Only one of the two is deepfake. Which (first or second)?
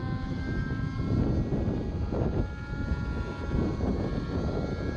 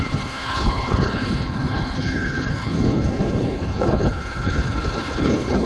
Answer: second